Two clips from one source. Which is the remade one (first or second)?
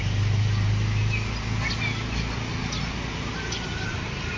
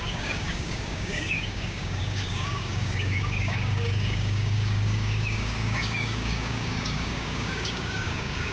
second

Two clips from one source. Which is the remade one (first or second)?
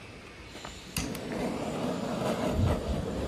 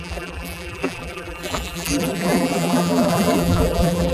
second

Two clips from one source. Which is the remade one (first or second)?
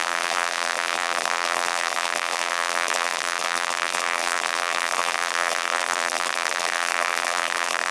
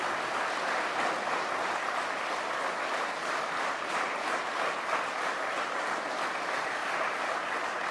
first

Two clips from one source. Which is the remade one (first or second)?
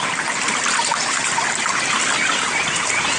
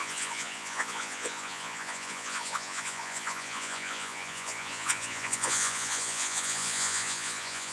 second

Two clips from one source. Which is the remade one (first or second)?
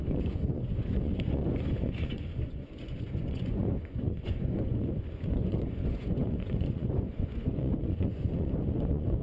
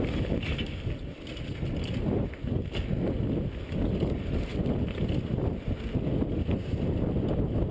first